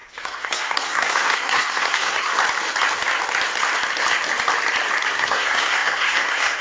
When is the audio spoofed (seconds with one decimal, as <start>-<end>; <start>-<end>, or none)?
0.0-2.3; 5.1-6.6